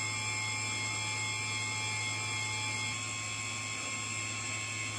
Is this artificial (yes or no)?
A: no